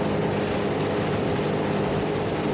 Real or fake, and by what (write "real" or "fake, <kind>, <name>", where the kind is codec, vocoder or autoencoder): real